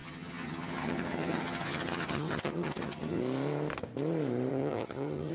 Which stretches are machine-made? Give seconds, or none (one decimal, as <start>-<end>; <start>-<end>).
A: 0.0-3.2; 4.5-5.3